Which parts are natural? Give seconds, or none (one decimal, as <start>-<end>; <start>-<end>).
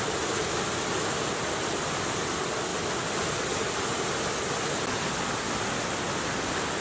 0.0-6.8